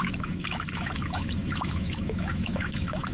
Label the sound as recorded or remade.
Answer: remade